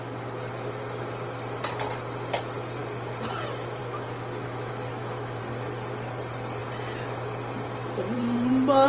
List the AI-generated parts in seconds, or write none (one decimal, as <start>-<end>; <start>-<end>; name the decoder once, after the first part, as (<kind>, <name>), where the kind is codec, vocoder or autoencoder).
3.8-5.4 (autoencoder, DAC-VAE)